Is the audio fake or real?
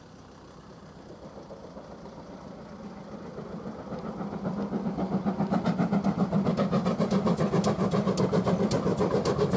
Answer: real